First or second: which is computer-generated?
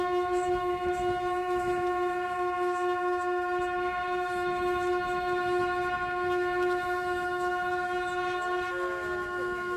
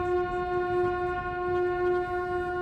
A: first